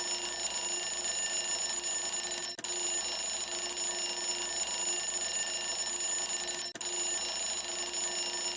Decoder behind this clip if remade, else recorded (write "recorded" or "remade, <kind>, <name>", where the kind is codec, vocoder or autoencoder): recorded